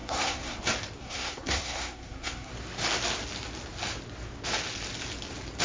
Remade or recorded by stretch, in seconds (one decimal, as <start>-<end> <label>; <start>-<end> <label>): 0.0-0.6 remade; 0.6-1.0 recorded; 1.0-2.5 remade; 2.5-5.6 recorded